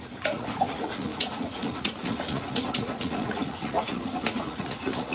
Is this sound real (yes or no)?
no